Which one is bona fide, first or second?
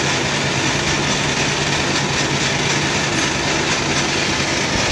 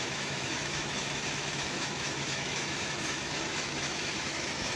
first